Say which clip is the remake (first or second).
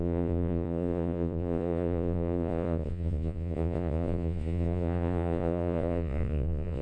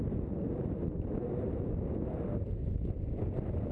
first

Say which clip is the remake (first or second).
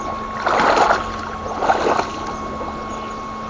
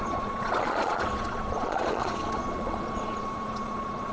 second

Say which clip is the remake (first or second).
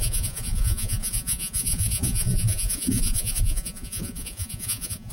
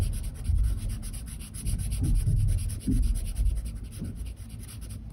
first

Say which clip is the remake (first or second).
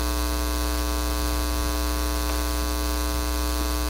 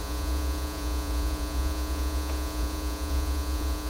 second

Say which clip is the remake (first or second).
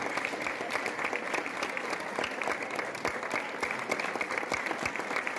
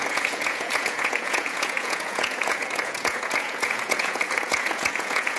second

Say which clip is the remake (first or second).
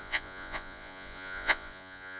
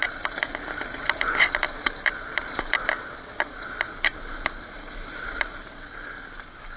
first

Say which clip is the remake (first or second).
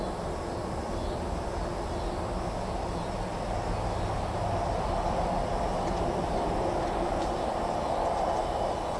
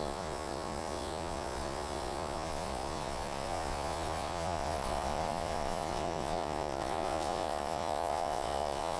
second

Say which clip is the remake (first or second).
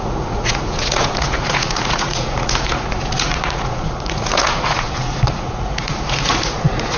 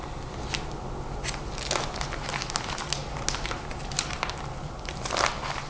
first